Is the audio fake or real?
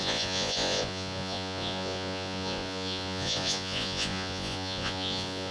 fake